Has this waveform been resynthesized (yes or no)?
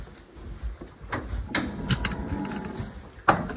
no